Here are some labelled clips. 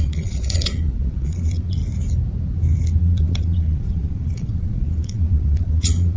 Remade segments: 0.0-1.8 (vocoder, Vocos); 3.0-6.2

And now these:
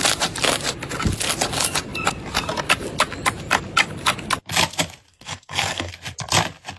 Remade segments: 5.1-5.9 (codec, SNAC)

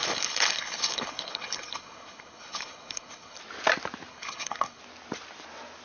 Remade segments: 0.0-3.4 (codec, HILCodec); 4.1-4.8

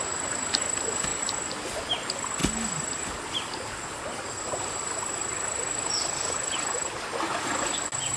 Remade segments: none

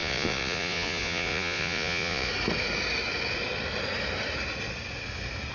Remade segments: 0.0-2.3 (vocoder, Vocos)

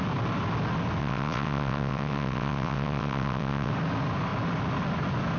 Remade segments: 1.0-3.7 (vocoder, WaveNeXt)

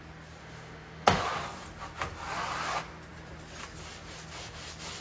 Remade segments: 0.4-1.2 (autoencoder, DAC-VAE)